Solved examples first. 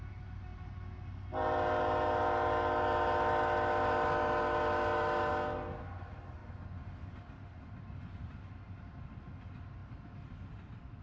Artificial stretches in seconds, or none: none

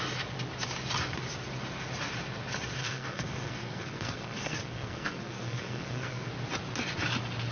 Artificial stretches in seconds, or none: 2.8-6.3

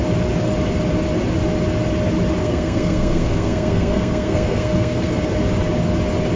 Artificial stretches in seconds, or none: 2.4-5.1